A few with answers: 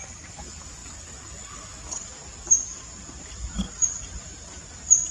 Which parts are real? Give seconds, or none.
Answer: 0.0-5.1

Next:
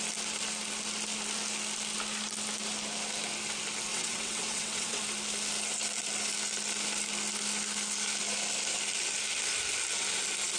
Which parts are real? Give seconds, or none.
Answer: 0.0-3.9; 5.0-10.6

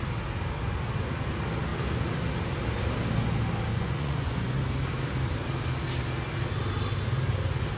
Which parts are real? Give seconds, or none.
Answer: 0.0-3.7; 4.6-7.8

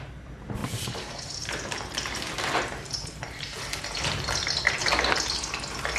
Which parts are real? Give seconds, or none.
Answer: 0.0-0.6; 3.8-4.8; 5.3-6.0

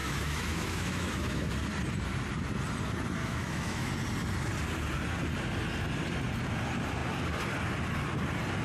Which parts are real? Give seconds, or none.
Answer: 1.5-3.2; 3.9-8.6

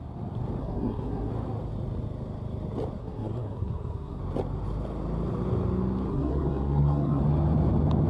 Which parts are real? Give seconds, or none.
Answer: 0.0-0.6; 1.3-3.0; 4.2-6.1; 7.2-8.1

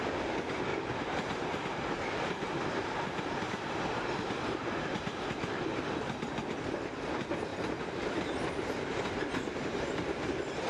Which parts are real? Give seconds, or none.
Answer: 0.0-0.7; 5.9-7.5